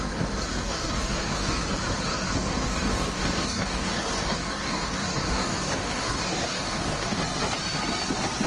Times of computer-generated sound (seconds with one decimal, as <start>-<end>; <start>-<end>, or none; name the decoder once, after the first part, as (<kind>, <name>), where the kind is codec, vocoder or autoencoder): 0.5-1.6 (codec, DAC); 2.1-7.2